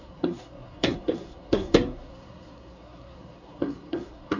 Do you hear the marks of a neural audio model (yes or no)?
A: yes